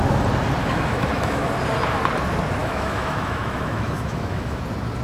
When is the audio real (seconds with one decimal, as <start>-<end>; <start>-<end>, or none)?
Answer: 0.0-0.6; 1.5-2.6; 4.6-5.0